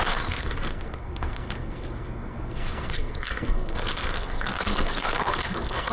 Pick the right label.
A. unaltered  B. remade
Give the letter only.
B